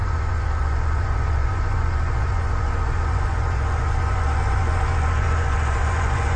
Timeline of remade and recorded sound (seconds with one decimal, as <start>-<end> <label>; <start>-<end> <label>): 0.0-6.4 remade